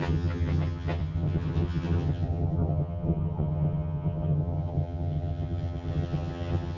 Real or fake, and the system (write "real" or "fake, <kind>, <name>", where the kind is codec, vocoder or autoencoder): fake, vocoder, HiFi-GAN